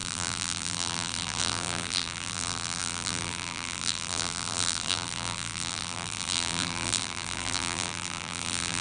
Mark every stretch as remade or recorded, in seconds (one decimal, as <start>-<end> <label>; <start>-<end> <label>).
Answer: 0.0-8.8 remade